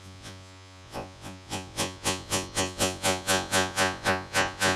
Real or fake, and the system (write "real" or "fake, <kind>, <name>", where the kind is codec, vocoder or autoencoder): fake, vocoder, Vocos